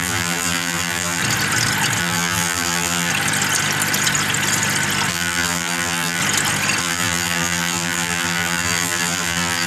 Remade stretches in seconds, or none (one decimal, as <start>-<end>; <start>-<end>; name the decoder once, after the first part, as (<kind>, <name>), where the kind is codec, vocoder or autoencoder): 0.0-1.2 (vocoder, BigVGAN v2); 2.0-3.1; 5.1-6.2; 6.8-9.7